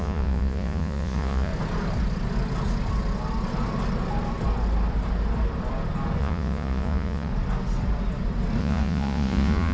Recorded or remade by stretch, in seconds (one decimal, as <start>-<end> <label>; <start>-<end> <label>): 0.0-1.5 remade; 1.5-6.2 recorded; 6.2-7.3 remade; 7.3-8.6 recorded; 8.6-9.7 remade